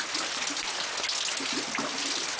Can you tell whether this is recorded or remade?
recorded